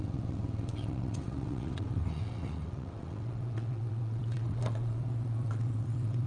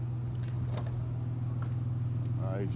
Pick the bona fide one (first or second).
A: second